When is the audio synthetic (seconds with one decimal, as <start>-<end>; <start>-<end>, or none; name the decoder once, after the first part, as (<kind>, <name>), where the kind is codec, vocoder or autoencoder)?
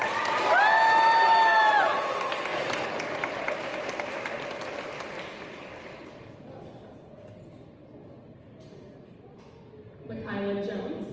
none